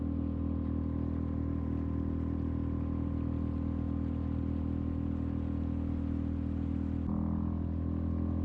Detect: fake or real real